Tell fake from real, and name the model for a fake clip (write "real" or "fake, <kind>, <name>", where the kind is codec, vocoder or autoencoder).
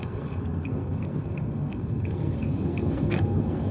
fake, codec, SNAC